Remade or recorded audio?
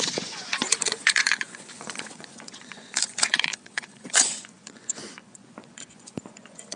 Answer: remade